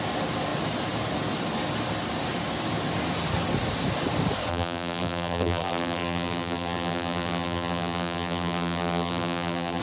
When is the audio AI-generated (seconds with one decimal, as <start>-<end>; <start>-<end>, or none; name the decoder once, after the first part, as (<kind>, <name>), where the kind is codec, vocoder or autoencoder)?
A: 4.5-9.8 (vocoder, BigVGAN v2)